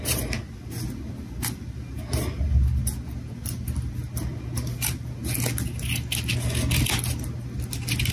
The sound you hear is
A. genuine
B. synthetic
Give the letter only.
A